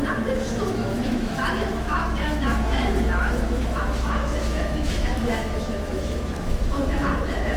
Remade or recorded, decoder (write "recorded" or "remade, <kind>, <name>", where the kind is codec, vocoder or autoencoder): remade, autoencoder, DAC-VAE